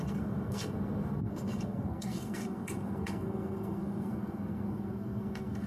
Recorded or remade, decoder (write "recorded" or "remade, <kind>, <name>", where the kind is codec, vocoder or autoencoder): remade, codec, SNAC